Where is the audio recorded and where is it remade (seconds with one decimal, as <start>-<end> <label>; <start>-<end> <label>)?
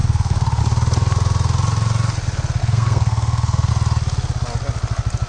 0.0-0.6 remade; 0.6-2.6 recorded; 2.6-3.7 remade; 3.7-5.3 recorded